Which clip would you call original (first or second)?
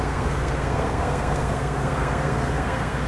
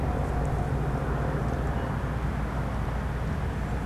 second